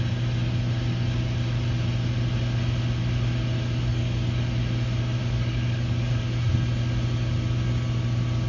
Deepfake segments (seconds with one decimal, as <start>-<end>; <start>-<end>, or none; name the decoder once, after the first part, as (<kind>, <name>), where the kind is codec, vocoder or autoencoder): 3.9-4.4 (codec, DAC); 5.2-6.2